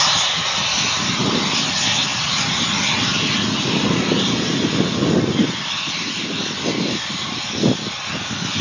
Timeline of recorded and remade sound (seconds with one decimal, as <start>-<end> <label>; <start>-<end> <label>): 0.0-8.6 recorded